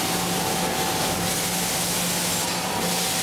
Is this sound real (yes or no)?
yes